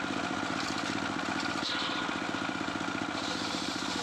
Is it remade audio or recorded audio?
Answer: recorded